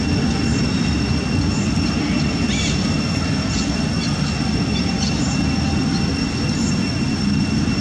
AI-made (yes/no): no